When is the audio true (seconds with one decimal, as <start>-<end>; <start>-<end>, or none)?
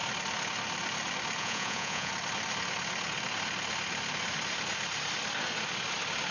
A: 0.0-1.4; 2.1-6.3